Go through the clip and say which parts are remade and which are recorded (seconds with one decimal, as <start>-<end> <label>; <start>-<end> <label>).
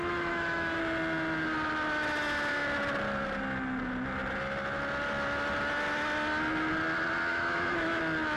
0.0-0.8 remade; 0.8-7.3 recorded; 7.3-8.0 remade; 8.0-8.4 recorded